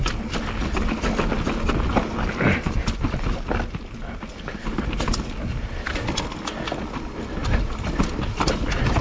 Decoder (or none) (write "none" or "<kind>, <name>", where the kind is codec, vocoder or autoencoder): none